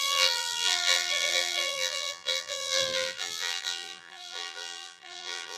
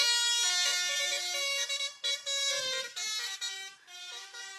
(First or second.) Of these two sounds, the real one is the second